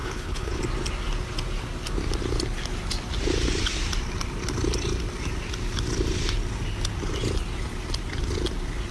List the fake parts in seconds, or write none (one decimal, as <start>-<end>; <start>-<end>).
0.0-0.6